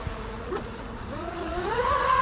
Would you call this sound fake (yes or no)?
yes